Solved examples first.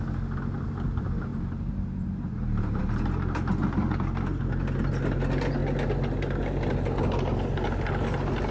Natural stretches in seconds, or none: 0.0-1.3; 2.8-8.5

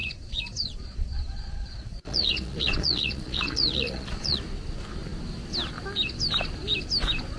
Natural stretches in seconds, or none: 4.4-7.4

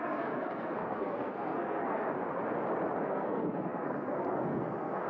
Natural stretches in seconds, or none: 2.4-3.0